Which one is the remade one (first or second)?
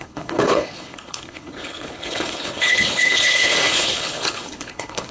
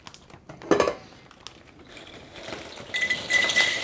first